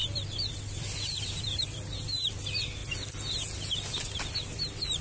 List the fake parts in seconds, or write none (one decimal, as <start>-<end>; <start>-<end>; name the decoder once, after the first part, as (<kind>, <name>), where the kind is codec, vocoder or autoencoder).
0.0-2.0 (vocoder, BigVGAN v2)